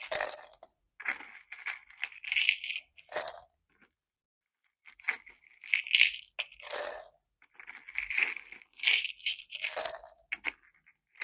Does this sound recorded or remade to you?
recorded